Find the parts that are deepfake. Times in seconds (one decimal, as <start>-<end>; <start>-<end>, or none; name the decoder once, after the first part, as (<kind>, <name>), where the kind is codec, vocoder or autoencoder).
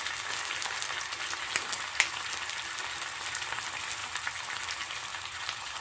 5.1-5.8 (vocoder, BigVGAN v2)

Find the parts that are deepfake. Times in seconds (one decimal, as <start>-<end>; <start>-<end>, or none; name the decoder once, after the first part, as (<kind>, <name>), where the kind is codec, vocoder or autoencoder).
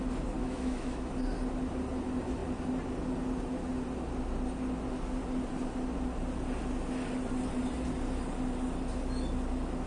0.4-1.1 (autoencoder, DAC-VAE)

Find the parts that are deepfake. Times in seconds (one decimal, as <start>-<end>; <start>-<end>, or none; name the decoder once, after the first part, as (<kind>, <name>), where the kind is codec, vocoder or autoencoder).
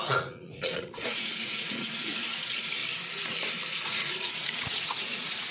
0.0-2.8 (vocoder, Vocos); 3.6-5.5